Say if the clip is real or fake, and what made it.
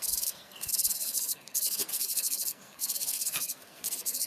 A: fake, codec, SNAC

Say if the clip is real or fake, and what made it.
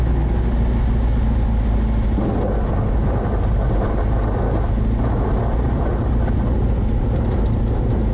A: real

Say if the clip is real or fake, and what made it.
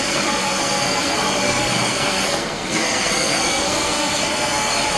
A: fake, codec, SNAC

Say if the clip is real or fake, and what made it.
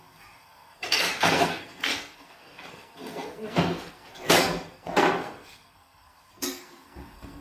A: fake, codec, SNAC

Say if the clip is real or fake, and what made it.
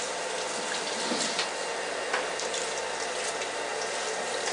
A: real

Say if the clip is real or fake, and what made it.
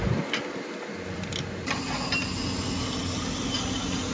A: real